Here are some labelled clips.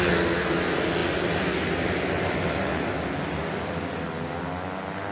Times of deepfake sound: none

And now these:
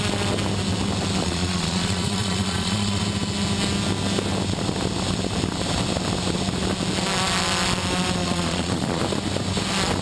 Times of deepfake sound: 1.2-3.0 (vocoder, Vocos); 8.2-9.0

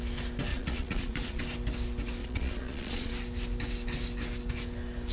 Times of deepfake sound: 0.5-1.4 (vocoder, Vocos); 2.2-3.1